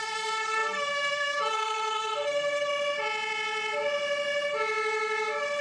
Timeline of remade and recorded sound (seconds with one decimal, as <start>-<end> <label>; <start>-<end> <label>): 0.0-2.7 remade; 2.7-5.6 recorded